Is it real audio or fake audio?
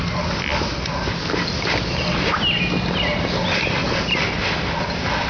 real